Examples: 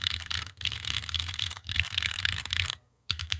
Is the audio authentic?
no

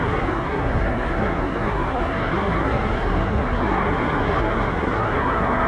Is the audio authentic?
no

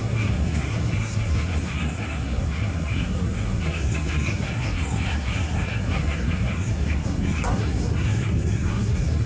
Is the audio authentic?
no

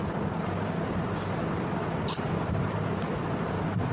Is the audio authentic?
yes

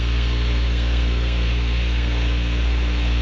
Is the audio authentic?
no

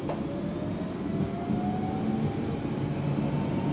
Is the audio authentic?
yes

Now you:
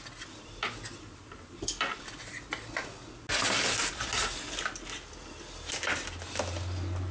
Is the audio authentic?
yes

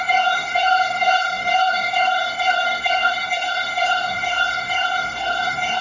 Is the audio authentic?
no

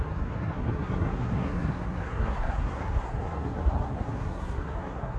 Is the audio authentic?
no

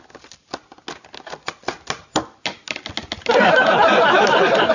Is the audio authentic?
yes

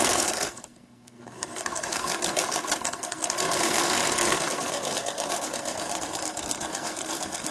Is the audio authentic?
no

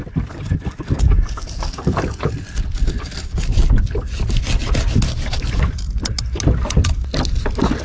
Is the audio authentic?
yes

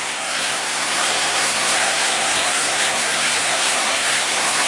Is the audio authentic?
no